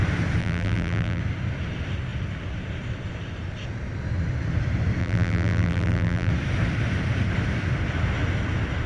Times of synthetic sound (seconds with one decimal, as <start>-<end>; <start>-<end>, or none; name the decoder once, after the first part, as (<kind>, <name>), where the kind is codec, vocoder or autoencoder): 0.4-1.2 (vocoder, BigVGAN v2); 5.0-6.3